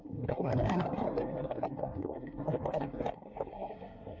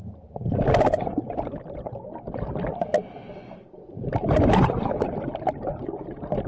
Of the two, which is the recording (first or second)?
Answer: second